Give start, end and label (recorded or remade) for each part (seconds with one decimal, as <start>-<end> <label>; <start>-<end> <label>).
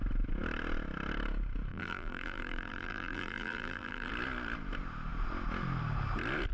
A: 0.0-1.7 recorded; 1.7-4.1 remade; 4.1-6.5 recorded